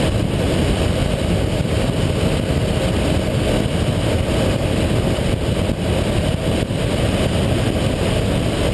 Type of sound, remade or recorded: recorded